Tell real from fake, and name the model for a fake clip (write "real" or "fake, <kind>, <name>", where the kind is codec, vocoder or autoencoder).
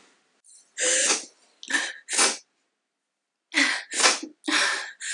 real